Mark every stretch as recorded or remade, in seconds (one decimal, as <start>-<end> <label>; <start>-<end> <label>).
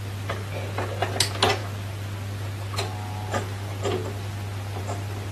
0.0-5.3 recorded